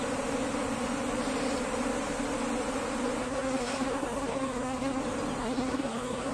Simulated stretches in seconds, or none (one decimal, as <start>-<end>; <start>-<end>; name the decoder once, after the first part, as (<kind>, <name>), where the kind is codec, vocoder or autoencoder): 3.2-5.0 (codec, SNAC); 5.4-6.3